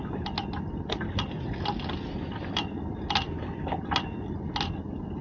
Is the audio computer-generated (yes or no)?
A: no